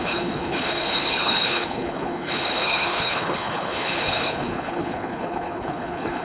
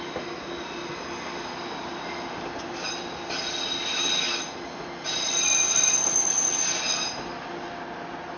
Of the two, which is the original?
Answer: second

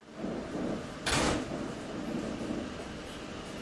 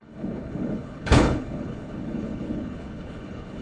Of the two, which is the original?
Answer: first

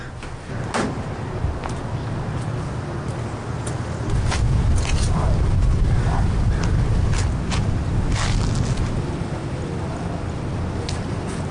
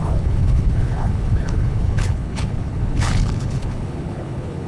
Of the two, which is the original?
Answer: first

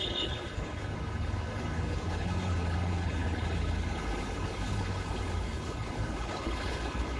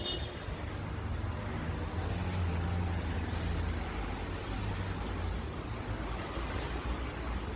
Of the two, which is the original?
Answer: second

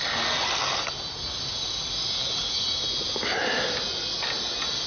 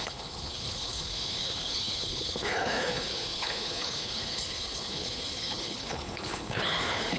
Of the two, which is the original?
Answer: first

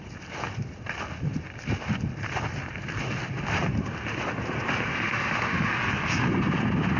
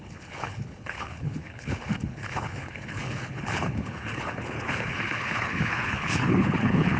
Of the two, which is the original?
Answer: first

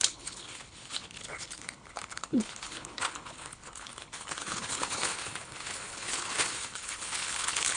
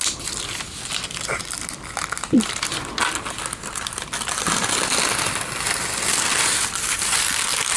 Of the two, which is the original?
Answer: second